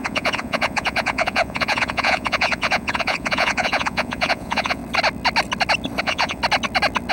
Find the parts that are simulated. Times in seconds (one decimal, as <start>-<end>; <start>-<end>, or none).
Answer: 0.0-4.8; 6.0-6.4